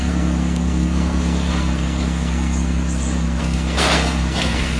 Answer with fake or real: fake